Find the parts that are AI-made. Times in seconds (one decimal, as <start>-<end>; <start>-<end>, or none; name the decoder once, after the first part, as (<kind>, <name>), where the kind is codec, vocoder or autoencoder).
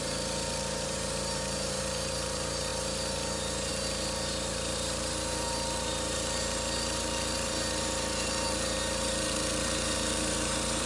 0.0-10.9 (vocoder, BigVGAN v2)